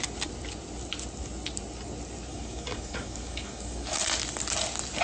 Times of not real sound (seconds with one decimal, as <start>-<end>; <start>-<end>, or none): 2.3-4.0